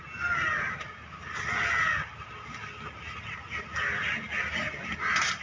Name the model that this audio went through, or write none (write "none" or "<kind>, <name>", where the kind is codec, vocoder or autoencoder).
none